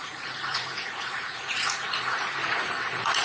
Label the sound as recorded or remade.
remade